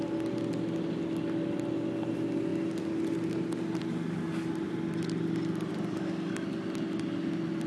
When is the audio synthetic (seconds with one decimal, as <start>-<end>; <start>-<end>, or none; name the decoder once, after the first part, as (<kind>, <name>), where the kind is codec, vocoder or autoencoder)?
none